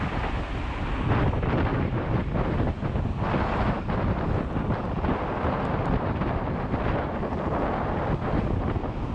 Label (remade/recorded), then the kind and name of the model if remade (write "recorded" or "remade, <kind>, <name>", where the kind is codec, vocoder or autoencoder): recorded